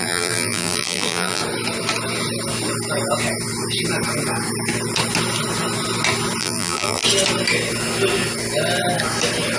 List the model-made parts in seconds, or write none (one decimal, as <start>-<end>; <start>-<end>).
0.0-1.4; 6.4-7.0